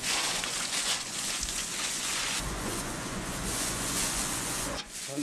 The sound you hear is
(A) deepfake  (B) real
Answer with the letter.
A